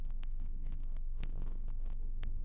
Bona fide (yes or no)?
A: no